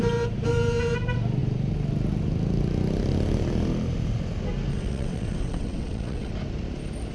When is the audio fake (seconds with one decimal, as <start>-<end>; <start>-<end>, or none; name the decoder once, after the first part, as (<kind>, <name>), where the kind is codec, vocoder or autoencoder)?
4.7-6.3 (vocoder, WaveNeXt)